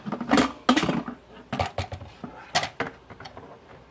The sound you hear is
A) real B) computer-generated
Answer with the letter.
A